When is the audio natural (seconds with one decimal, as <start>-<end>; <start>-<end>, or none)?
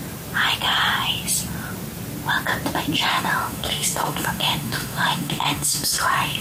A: 0.0-3.1